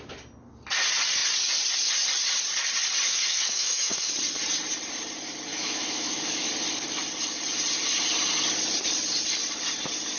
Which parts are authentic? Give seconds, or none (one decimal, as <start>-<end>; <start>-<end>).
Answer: 0.0-3.1; 4.1-5.5; 6.5-10.2